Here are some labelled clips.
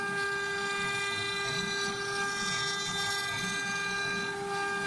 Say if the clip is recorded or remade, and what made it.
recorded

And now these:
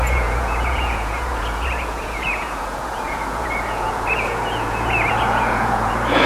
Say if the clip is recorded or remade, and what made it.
remade, vocoder, Vocos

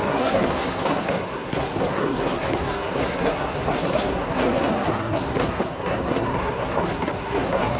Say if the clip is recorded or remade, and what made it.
remade, codec, SNAC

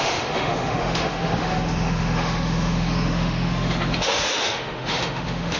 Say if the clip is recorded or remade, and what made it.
remade, autoencoder, DAC-VAE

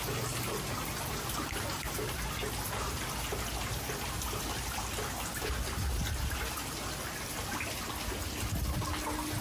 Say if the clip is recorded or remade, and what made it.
recorded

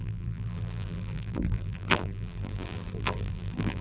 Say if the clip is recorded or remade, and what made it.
remade, vocoder, BigVGAN v2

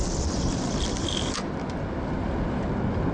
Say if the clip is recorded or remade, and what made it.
recorded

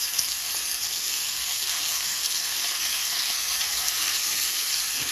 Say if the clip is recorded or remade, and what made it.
remade, codec, SNAC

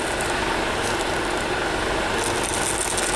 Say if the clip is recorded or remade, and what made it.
recorded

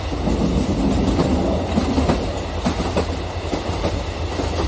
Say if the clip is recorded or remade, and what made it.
recorded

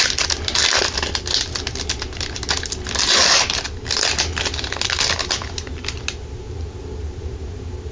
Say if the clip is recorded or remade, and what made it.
recorded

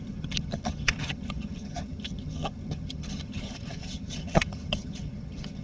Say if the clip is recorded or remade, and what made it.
remade, vocoder, HiFi-GAN